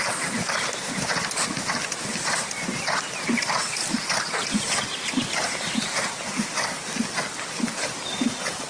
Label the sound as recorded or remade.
recorded